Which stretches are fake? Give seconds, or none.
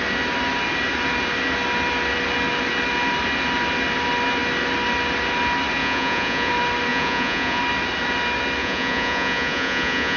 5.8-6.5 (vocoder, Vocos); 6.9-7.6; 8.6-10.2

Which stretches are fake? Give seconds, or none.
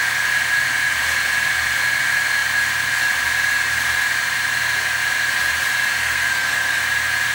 6.0-6.8 (codec, SNAC)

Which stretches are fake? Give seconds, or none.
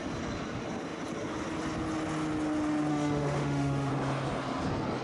2.9-3.9 (autoencoder, DAC-VAE)